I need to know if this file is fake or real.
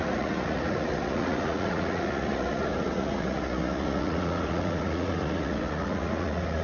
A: fake